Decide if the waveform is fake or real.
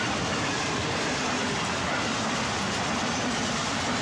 real